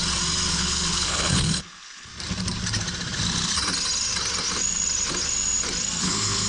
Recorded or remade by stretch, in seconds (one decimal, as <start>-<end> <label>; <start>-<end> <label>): 0.0-0.5 recorded; 0.5-2.1 remade; 2.1-6.0 recorded; 6.0-6.5 remade